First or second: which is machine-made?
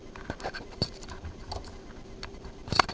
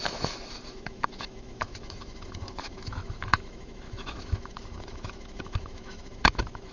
second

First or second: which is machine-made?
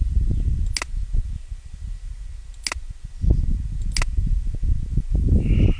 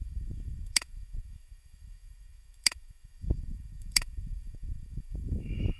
second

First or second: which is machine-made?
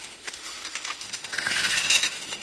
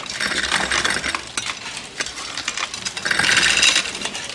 first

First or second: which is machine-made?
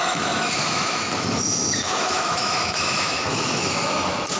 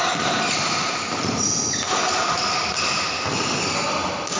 first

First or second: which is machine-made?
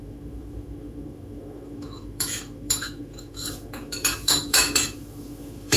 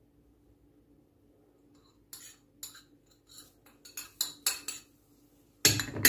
first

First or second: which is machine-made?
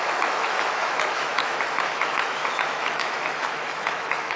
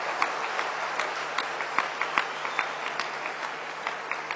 first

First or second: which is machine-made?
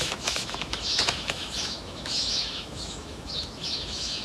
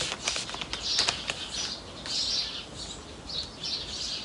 first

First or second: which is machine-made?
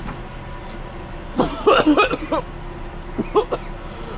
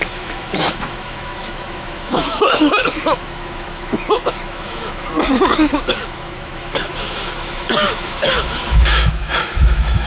second